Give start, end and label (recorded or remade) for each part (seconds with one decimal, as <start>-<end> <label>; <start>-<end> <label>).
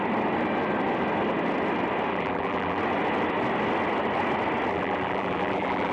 0.0-2.1 recorded; 2.1-2.8 remade; 2.8-4.7 recorded; 4.7-5.9 remade